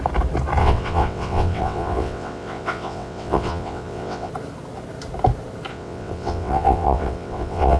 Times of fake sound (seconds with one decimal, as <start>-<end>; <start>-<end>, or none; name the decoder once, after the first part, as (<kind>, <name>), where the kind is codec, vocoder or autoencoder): 0.6-4.3 (vocoder, WaveNeXt); 5.7-7.8